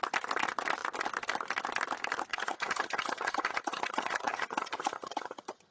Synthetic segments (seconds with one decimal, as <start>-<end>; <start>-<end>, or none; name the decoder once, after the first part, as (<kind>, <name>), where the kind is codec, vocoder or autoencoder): 2.3-5.7 (vocoder, HiFi-GAN)